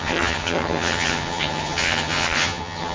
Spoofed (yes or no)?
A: yes